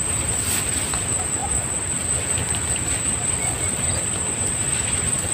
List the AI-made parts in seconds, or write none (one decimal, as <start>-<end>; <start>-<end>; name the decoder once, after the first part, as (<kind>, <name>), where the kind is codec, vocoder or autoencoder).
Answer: none